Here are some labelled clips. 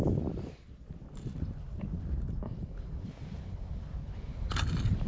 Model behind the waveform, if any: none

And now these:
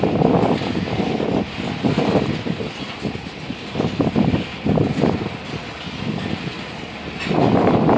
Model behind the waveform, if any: none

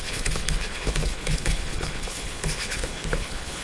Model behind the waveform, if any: codec, HILCodec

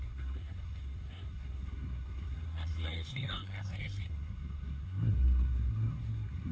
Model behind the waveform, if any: codec, SNAC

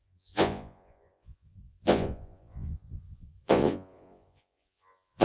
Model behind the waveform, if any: vocoder, Vocos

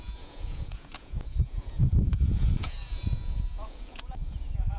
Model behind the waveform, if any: vocoder, Vocos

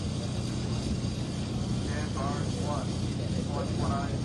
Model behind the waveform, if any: none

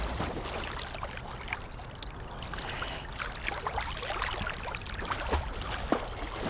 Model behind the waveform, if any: none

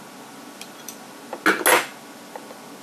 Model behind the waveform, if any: none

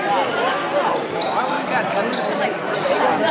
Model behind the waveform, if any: none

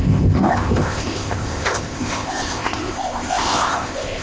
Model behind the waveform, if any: codec, ZipCodec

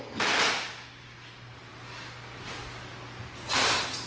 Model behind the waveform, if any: none